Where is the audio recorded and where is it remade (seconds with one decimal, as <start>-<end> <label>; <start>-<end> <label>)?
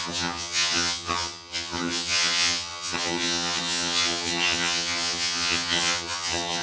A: 0.0-6.6 remade